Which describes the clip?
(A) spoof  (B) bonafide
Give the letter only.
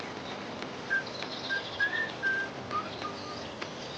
B